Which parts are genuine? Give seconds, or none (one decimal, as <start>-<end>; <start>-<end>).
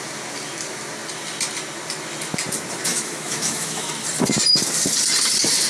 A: 0.0-2.9; 3.9-5.7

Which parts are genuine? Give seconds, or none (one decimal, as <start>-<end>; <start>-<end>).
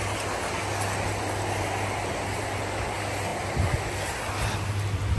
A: 0.0-5.2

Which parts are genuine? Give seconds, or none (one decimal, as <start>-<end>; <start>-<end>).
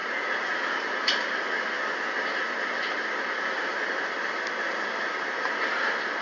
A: 0.0-6.2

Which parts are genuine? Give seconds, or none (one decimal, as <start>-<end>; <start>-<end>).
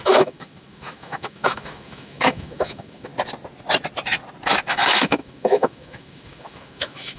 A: 3.1-4.7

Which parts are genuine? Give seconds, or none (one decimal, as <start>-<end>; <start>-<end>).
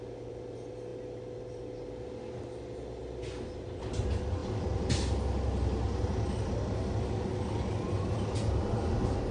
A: 0.0-9.3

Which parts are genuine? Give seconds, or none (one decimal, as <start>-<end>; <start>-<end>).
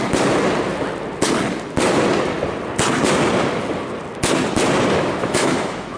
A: 0.0-5.2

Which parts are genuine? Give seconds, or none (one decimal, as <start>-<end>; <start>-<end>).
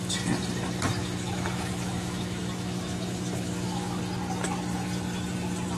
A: 0.0-1.0; 4.0-5.8